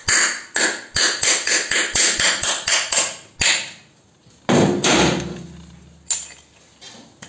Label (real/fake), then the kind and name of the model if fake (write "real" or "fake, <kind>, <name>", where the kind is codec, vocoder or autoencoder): real